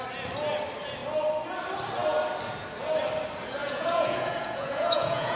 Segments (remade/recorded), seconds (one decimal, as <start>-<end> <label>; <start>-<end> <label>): 0.0-3.6 recorded; 3.6-5.4 remade